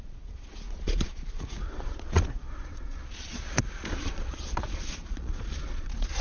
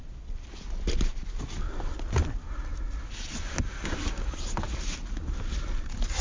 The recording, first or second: second